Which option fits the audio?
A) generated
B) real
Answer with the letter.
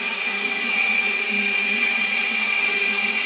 A